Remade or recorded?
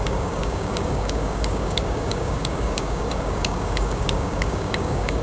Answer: remade